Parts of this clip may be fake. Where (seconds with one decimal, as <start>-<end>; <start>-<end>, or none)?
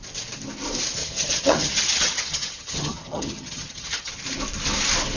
1.0-4.1